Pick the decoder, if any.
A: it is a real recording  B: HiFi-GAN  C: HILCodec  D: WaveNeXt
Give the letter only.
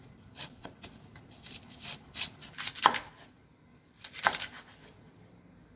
A